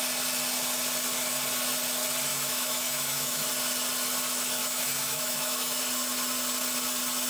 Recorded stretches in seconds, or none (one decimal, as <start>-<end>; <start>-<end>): 0.0-2.3; 3.5-4.6; 5.8-7.3